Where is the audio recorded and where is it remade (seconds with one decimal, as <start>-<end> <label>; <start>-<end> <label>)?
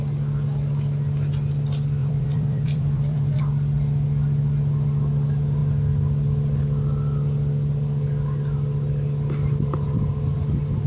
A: 0.0-2.0 recorded; 2.0-3.4 remade; 3.4-10.9 recorded